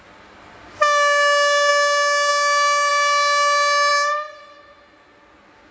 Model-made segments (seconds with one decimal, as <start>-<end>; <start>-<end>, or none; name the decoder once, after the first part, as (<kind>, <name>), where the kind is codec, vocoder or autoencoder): none